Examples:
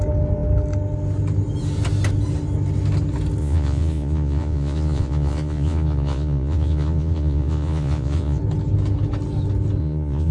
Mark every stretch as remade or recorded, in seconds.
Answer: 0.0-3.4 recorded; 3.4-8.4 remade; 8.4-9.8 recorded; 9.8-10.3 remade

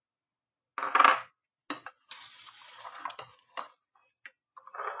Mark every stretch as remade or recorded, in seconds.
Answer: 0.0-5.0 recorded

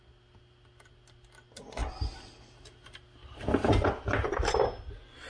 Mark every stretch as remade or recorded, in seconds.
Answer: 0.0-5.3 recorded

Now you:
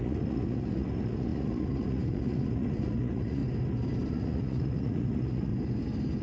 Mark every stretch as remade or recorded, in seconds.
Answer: 0.0-3.4 remade; 3.4-4.1 recorded; 4.1-5.5 remade; 5.5-6.2 recorded

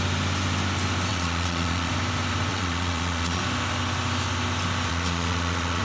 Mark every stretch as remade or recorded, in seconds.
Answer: 0.0-1.1 recorded; 1.1-1.9 remade; 1.9-2.5 recorded; 2.5-3.4 remade; 3.4-4.9 recorded; 4.9-5.8 remade

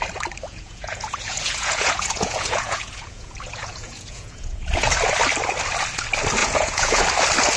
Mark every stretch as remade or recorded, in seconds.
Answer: 0.0-0.5 recorded; 0.5-4.9 remade; 4.9-6.4 recorded; 6.4-7.0 remade; 7.0-7.6 recorded

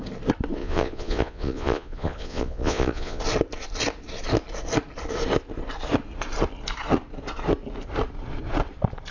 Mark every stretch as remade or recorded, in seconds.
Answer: 0.0-0.6 recorded; 0.6-3.2 remade; 3.2-9.1 recorded